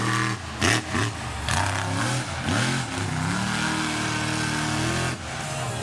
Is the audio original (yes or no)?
yes